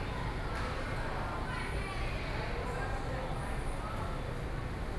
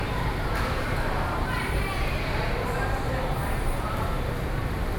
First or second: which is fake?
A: second